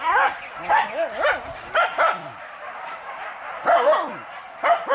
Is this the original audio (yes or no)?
yes